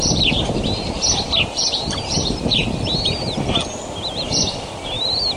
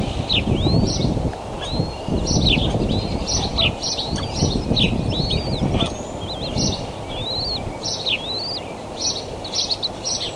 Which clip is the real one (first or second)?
second